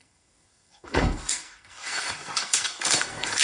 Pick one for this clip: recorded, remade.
remade